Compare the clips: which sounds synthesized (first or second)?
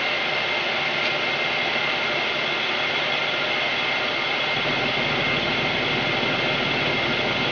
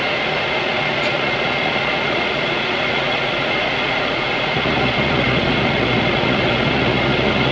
second